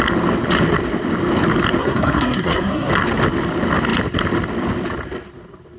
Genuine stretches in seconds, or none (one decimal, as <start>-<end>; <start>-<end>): 0.0-1.8; 2.9-5.8